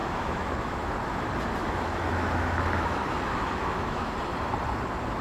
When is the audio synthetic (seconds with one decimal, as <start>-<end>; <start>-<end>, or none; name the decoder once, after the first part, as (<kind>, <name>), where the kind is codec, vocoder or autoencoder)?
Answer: 0.0-0.9 (autoencoder, DAC-VAE); 1.6-4.1